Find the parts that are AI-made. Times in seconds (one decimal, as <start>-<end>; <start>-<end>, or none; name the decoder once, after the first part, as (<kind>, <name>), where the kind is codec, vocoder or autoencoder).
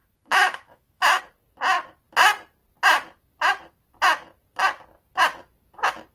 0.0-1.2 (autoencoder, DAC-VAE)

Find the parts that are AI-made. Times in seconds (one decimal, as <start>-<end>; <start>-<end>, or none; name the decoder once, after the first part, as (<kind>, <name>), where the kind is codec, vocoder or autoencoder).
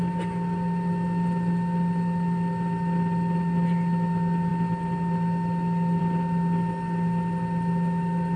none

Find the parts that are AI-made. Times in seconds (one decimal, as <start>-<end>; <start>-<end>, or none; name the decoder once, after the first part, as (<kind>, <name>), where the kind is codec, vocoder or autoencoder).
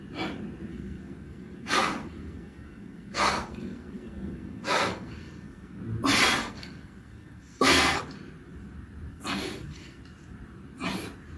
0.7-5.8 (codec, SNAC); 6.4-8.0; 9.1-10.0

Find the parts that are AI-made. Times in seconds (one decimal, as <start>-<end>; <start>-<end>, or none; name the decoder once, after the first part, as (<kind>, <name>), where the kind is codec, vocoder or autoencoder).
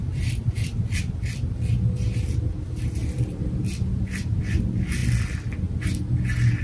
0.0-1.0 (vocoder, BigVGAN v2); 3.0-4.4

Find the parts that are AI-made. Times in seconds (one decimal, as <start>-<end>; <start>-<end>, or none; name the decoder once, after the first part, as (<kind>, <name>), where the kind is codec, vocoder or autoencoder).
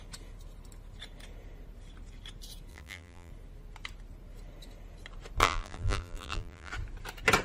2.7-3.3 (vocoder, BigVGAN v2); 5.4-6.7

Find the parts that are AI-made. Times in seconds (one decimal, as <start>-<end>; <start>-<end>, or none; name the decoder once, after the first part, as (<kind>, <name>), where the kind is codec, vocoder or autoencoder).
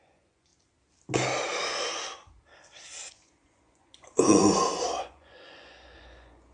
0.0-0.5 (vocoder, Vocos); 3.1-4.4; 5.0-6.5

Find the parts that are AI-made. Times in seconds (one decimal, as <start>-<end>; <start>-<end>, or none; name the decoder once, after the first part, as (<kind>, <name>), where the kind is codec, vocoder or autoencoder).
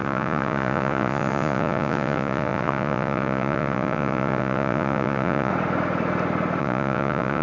0.0-5.5 (vocoder, Vocos); 6.6-7.4